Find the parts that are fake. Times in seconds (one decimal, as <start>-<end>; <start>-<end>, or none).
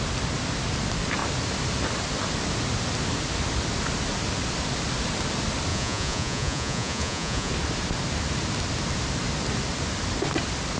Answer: 5.7-7.5